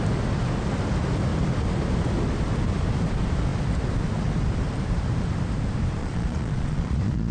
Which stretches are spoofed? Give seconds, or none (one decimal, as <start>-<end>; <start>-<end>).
6.0-7.3